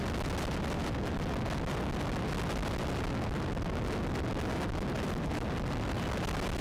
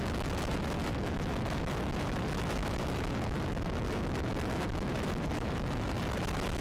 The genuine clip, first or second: first